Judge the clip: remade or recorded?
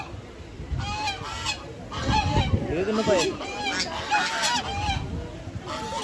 recorded